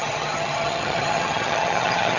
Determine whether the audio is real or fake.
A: fake